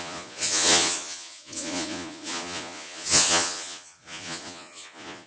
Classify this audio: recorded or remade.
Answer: remade